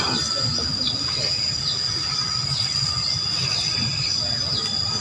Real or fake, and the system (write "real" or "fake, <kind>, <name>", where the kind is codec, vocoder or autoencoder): real